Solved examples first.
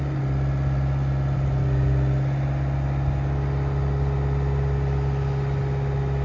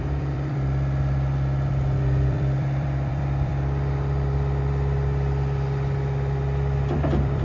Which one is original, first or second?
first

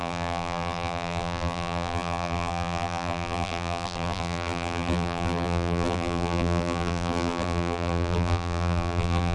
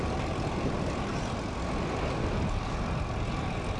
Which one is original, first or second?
second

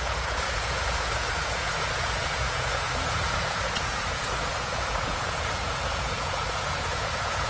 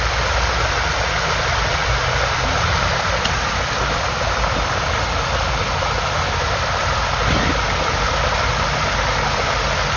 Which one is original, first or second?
second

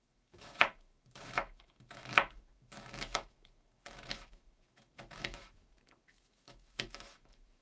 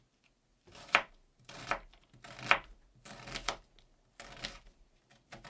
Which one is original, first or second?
second